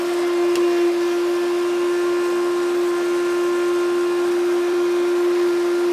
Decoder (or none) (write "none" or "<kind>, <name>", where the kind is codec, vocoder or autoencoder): none